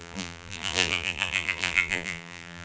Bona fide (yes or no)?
no